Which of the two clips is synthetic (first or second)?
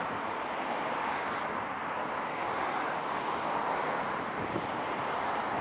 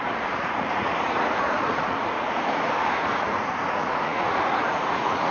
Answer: second